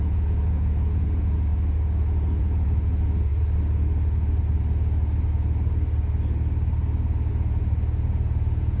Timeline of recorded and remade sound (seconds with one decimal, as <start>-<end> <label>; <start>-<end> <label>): 0.0-1.5 remade; 1.5-2.4 recorded; 2.4-3.3 remade; 3.3-7.3 recorded; 7.3-8.8 remade